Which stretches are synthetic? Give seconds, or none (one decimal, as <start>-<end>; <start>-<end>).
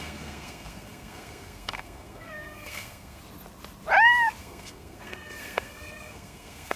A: 0.0-3.2; 4.4-6.8